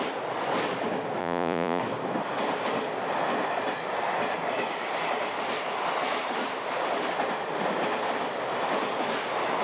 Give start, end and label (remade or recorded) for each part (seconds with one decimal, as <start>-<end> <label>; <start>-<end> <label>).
0.0-1.2 recorded; 1.2-1.8 remade; 1.8-9.6 recorded